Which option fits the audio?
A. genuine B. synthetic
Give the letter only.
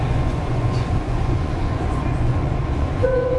B